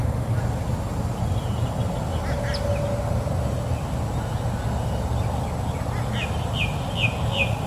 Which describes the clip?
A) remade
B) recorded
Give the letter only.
B